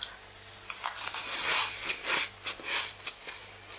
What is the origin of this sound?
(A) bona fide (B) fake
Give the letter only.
A